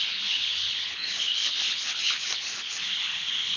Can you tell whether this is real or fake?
fake